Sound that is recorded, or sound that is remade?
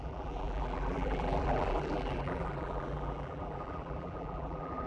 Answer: remade